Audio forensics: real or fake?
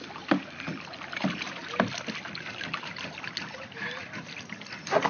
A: real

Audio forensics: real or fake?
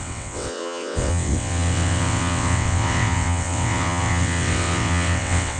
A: fake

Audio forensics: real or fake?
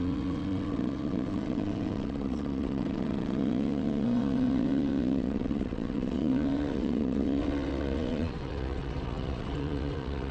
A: fake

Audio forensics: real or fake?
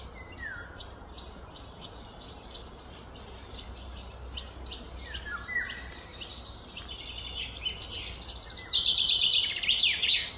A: real